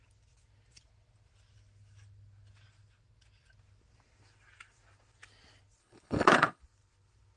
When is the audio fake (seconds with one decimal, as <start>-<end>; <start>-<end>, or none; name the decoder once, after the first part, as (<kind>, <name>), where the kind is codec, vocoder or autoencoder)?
5.8-6.6 (codec, HILCodec)